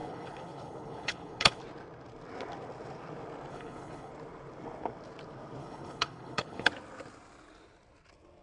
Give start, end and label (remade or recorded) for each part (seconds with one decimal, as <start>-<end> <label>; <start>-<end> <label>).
0.0-1.6 remade; 1.6-3.5 recorded; 3.5-4.1 remade; 4.1-5.6 recorded; 5.6-6.7 remade; 6.7-8.4 recorded